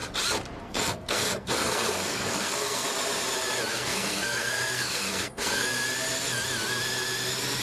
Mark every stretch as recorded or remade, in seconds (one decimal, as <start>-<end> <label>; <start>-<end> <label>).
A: 0.0-0.6 recorded; 0.6-2.9 remade; 2.9-3.7 recorded; 3.7-5.8 remade; 5.8-7.6 recorded